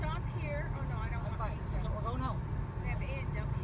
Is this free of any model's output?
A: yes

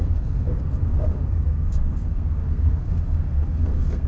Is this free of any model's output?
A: no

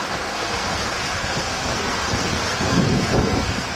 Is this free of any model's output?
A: no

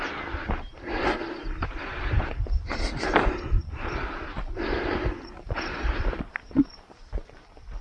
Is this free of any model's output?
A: no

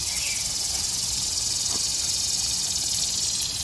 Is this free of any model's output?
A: yes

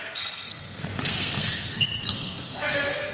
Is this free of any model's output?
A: no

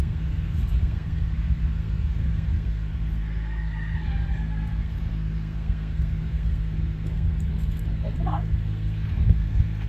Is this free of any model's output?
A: no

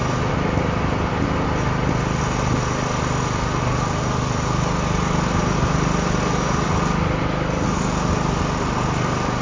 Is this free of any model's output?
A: yes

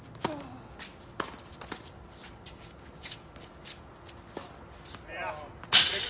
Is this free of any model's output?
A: yes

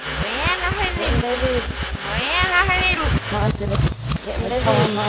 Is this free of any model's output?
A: yes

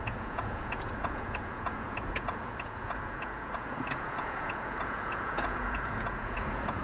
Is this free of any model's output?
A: no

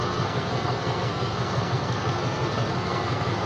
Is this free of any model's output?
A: no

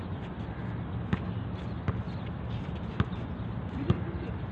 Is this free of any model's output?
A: yes